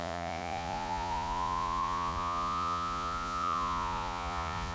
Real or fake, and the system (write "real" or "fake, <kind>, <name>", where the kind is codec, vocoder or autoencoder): fake, vocoder, Vocos